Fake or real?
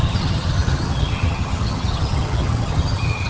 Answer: fake